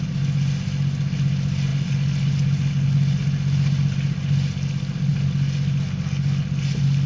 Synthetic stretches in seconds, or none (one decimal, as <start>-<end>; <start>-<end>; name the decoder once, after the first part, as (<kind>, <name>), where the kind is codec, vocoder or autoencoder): none